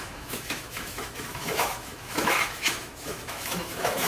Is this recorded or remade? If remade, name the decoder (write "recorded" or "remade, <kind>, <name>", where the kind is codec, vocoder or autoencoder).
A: remade, autoencoder, DAC-VAE